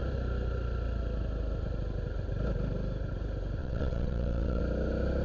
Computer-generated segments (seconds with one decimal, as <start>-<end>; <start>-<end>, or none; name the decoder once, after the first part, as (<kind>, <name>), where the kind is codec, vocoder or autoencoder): 3.6-4.6 (vocoder, WaveNeXt)